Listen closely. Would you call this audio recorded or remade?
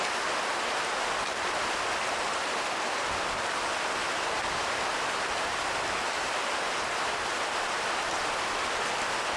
recorded